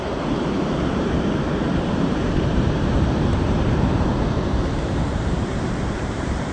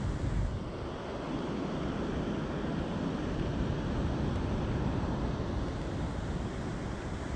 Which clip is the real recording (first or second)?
second